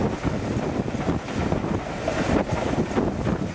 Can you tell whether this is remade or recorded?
recorded